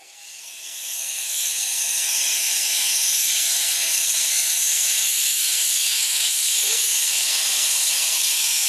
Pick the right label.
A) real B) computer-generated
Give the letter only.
B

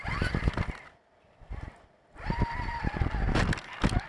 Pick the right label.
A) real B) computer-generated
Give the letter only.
A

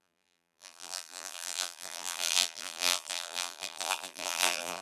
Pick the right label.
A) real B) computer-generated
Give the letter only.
B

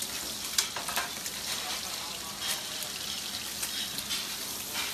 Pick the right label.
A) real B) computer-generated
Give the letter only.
A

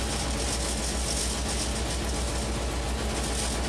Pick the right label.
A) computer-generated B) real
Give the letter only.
B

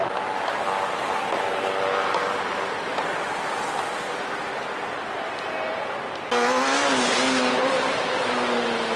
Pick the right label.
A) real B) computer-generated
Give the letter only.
A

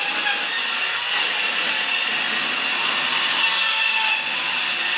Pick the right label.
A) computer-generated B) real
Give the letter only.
B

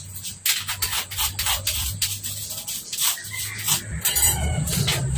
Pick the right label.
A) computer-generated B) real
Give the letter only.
B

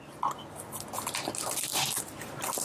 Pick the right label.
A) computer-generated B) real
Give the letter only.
B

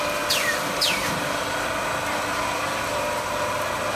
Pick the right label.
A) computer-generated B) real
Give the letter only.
B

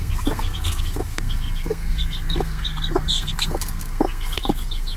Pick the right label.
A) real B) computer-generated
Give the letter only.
B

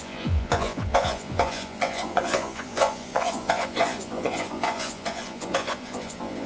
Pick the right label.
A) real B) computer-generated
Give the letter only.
B